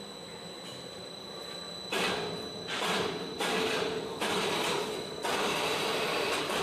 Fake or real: real